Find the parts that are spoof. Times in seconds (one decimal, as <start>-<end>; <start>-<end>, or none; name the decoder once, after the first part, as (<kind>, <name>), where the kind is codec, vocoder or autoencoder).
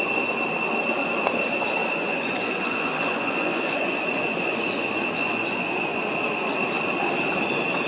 1.8-6.0 (vocoder, Vocos)